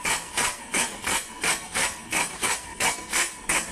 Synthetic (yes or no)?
yes